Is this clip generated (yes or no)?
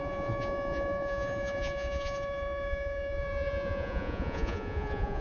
yes